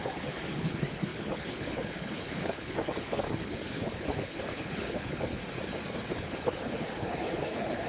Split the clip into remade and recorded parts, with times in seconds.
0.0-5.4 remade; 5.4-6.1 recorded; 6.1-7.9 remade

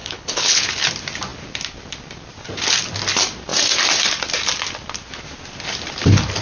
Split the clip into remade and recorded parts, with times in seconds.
0.0-0.7 remade; 0.7-6.4 recorded